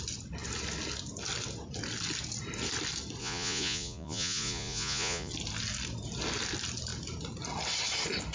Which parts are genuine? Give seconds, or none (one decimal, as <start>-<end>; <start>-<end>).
0.0-3.2; 5.3-8.3